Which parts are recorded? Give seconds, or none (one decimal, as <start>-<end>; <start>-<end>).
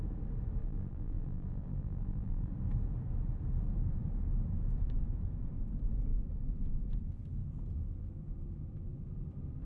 0.0-0.6; 2.5-9.7